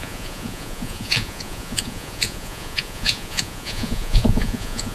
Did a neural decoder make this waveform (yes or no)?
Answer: yes